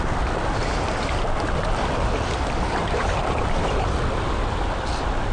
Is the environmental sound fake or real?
fake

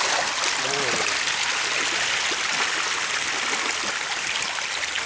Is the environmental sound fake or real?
real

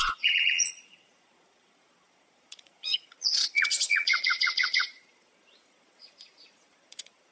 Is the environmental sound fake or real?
fake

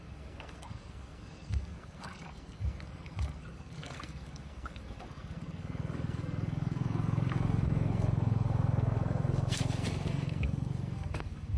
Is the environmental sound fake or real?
fake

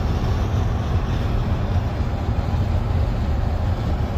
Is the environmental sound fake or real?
real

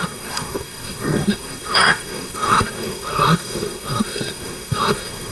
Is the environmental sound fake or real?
fake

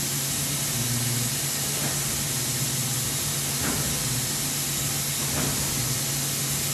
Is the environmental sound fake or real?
real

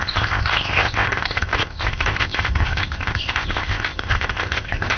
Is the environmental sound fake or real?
fake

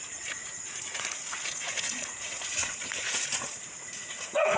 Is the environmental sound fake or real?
fake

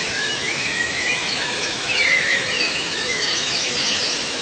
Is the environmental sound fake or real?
fake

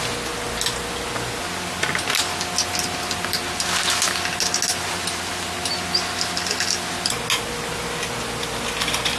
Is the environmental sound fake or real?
real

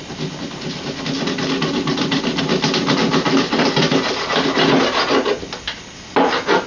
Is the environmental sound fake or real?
real